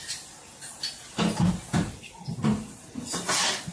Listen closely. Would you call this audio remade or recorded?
recorded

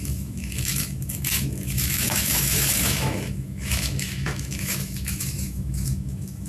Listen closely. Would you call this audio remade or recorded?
remade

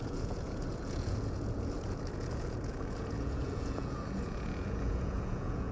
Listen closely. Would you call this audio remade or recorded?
remade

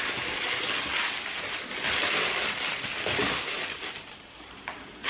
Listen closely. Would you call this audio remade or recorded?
recorded